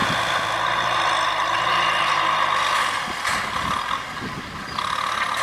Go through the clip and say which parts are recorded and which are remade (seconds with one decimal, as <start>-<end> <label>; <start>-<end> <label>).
0.0-5.4 recorded